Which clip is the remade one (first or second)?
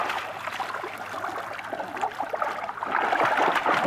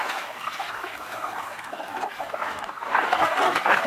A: second